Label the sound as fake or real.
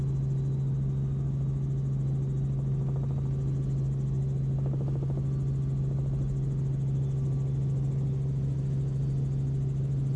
real